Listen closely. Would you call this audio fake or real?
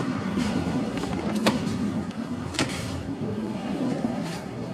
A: fake